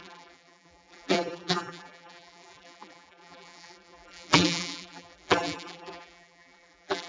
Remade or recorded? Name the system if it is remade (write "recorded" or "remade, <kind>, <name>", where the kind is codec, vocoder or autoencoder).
remade, vocoder, BigVGAN v2